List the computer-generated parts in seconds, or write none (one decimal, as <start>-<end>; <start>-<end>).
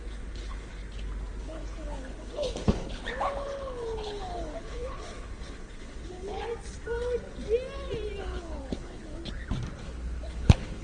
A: 0.0-0.8; 1.4-6.5; 8.2-9.2; 9.8-10.8